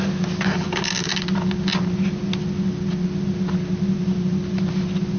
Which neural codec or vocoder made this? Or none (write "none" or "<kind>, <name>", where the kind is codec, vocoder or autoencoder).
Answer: none